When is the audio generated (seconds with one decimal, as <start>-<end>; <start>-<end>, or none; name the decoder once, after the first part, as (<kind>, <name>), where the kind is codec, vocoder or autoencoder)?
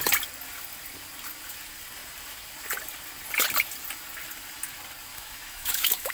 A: 5.1-6.1 (autoencoder, DAC-VAE)